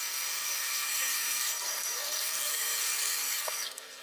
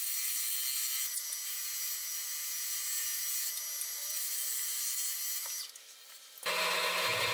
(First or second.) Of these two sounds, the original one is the second